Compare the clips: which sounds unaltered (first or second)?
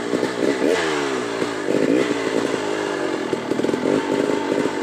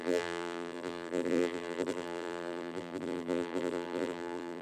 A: first